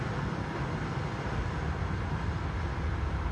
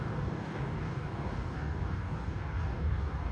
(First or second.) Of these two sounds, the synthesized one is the second